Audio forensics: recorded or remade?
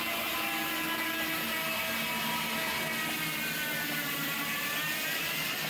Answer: recorded